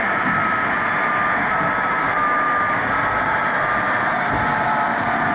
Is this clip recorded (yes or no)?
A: no